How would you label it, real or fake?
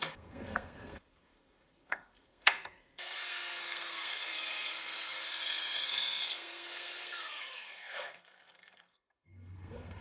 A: fake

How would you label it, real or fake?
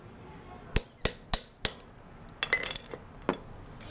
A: real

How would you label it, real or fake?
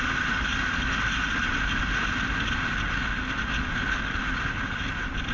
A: real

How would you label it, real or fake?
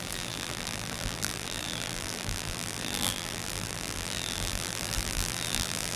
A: fake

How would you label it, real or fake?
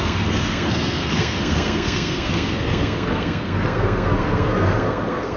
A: fake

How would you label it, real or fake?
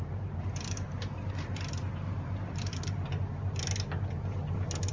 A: real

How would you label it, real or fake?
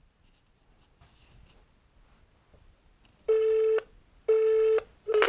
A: real